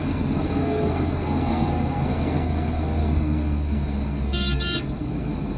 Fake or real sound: fake